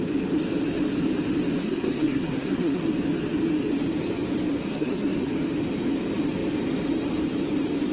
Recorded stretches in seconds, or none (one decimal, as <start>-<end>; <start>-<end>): 0.0-1.6; 2.8-4.7; 5.3-7.9